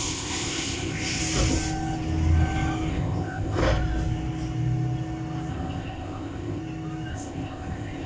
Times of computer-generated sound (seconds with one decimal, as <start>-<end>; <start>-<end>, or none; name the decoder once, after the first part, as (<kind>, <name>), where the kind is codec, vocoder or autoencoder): 0.0-1.2 (codec, ZipCodec); 2.9-3.6; 5.5-6.6; 7.1-8.1